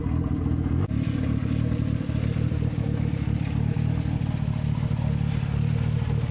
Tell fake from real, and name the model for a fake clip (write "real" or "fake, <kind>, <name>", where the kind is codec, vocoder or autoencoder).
real